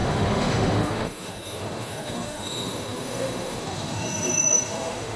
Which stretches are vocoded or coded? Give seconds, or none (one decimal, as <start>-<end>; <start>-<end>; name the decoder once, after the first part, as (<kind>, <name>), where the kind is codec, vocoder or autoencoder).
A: 0.0-5.2 (autoencoder, DAC-VAE)